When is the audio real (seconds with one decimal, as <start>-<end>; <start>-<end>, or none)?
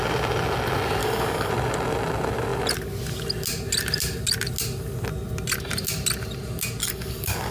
0.0-1.0; 1.5-6.8